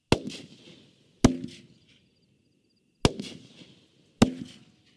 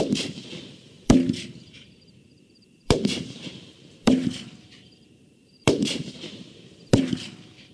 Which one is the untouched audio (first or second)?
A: first